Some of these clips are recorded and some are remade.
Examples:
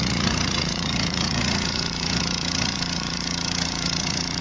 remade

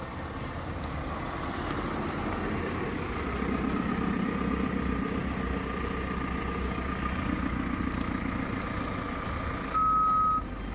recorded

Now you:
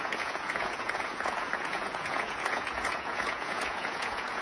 remade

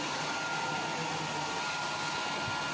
recorded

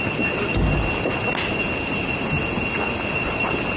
recorded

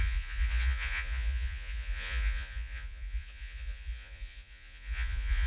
remade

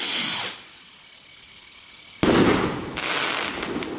recorded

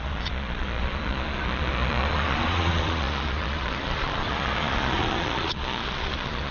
remade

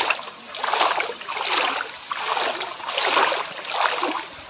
recorded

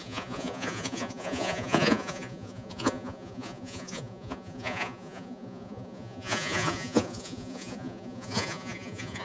remade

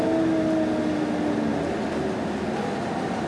recorded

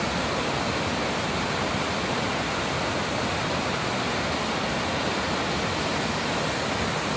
recorded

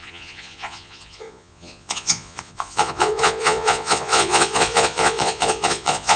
remade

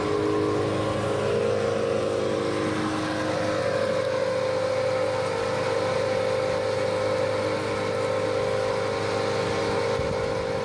recorded